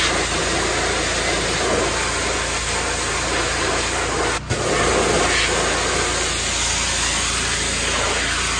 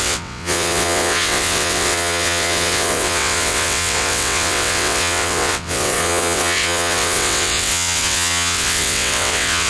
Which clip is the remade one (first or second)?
second